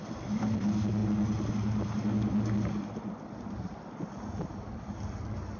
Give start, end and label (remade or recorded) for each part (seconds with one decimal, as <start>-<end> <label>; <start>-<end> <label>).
0.0-5.6 recorded